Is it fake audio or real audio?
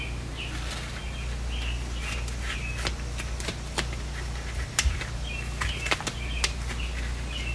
real